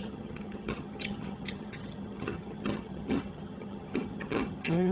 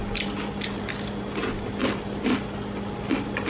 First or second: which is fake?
first